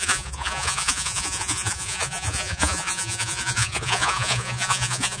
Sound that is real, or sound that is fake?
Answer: fake